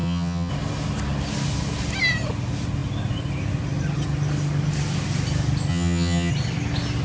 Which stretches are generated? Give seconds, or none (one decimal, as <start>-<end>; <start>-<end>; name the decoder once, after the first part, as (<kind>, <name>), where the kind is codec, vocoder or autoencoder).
0.0-0.5 (vocoder, HiFi-GAN); 5.7-6.3

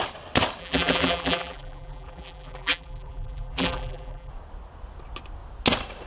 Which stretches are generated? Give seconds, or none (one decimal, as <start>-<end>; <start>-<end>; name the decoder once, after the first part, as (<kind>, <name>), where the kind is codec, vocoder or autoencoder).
0.6-4.3 (vocoder, BigVGAN v2)

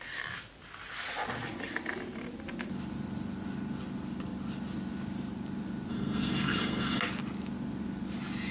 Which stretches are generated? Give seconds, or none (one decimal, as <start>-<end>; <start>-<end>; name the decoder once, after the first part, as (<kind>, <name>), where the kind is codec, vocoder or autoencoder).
5.9-7.0 (codec, SNAC)

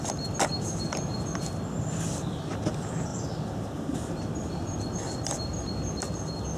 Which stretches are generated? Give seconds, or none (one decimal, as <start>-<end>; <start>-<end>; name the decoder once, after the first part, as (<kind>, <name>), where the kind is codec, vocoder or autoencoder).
none

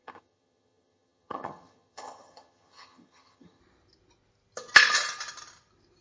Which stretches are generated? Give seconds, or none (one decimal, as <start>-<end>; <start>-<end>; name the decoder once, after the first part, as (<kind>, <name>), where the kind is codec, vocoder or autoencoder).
0.0-3.6 (vocoder, HiFi-GAN)

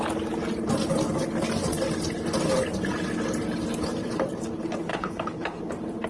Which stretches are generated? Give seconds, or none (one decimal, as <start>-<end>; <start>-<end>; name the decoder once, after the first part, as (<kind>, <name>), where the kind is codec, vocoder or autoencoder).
4.9-5.6 (codec, HILCodec)

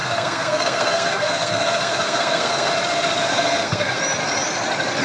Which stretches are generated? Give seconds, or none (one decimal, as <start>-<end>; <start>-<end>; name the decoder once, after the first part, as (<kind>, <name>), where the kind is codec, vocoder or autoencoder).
0.0-2.7 (codec, SNAC); 3.3-4.0

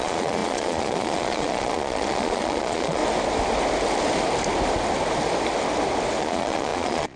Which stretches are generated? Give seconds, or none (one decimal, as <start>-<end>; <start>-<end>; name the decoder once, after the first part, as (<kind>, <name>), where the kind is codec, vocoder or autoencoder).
0.0-3.0 (vocoder, Vocos); 6.2-7.2